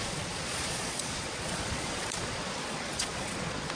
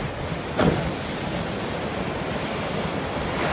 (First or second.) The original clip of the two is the second